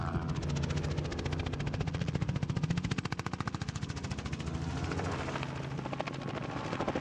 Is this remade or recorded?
recorded